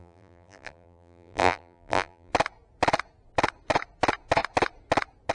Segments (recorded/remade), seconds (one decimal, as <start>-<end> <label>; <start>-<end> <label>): 0.0-2.3 remade; 2.3-5.3 recorded